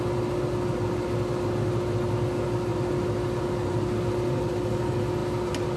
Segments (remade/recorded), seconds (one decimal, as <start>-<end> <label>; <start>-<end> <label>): 0.0-5.8 recorded